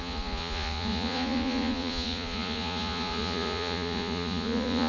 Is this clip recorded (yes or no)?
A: no